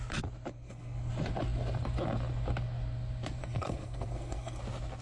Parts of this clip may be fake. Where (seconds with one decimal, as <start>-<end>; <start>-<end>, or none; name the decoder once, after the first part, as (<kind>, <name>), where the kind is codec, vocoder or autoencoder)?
0.5-1.1 (codec, SNAC); 3.4-4.6